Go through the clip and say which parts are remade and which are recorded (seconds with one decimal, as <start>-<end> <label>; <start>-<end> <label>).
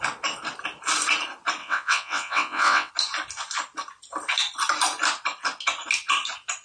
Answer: 0.0-1.6 recorded; 1.6-2.9 remade; 2.9-6.6 recorded